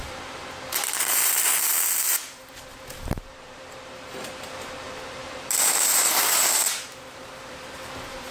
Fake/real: fake